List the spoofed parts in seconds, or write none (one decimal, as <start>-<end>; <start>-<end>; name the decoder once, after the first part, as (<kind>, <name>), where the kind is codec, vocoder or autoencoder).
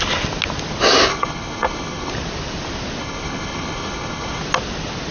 1.1-2.1 (codec, HILCodec); 3.0-4.4